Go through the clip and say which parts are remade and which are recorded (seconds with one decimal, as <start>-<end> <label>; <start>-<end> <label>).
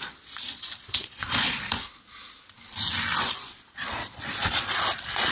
0.0-2.2 remade; 2.2-3.2 recorded; 3.2-5.3 remade